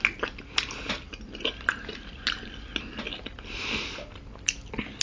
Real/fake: real